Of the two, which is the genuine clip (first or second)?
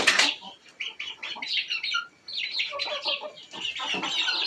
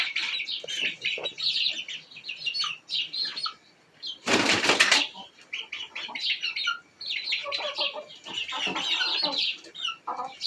second